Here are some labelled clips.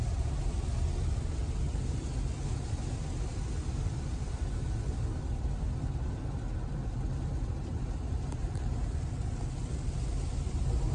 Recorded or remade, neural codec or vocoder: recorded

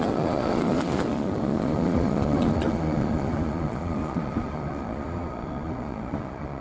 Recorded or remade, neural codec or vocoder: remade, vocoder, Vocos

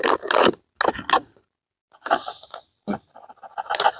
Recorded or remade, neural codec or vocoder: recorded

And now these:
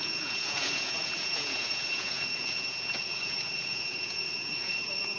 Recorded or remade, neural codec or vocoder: remade, vocoder, Vocos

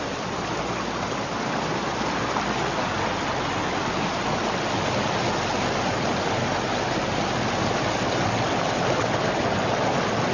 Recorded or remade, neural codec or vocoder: recorded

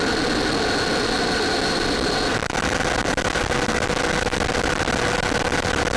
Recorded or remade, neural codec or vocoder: recorded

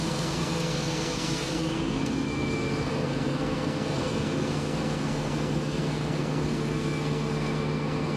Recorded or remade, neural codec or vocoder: remade, codec, SNAC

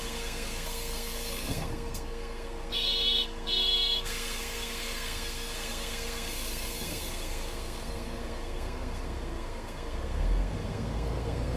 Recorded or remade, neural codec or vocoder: remade, codec, SNAC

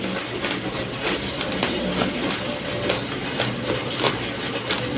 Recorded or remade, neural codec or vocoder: recorded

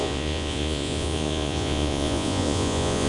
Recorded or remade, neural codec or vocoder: remade, vocoder, Vocos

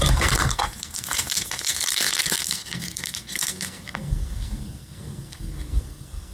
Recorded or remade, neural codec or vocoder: remade, codec, SNAC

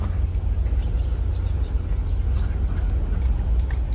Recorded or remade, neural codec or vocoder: recorded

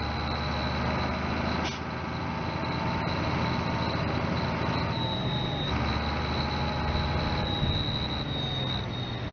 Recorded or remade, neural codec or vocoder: recorded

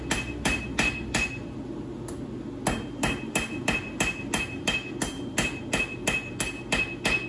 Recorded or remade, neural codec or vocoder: recorded